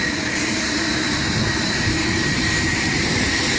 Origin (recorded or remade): remade